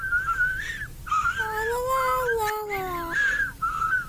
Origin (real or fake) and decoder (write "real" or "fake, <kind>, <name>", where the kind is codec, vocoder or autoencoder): real